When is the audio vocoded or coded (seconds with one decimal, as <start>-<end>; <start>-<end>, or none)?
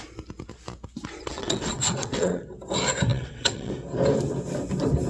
1.2-2.4; 3.1-3.7